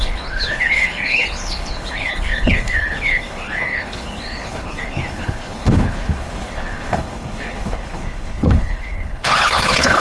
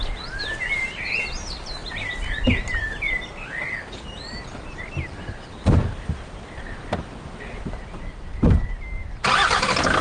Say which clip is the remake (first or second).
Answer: first